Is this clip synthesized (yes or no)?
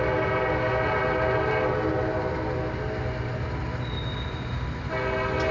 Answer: no